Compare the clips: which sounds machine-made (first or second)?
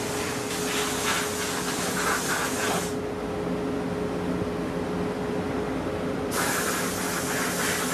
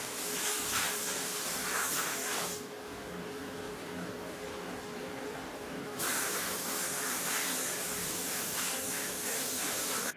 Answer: second